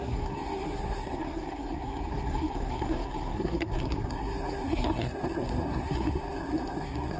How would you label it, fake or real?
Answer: fake